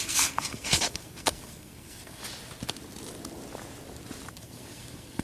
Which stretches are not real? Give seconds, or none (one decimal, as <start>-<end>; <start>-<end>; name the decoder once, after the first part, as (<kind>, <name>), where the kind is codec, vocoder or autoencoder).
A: 0.0-2.2 (codec, SNAC); 4.3-5.2